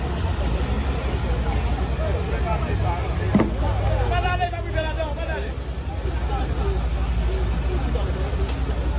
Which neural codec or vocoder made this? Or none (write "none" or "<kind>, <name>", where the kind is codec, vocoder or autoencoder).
none